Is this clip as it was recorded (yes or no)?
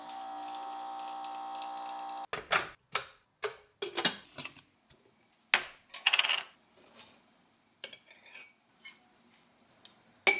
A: yes